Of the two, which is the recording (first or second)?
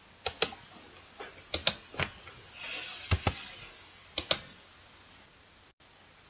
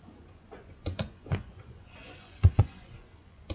first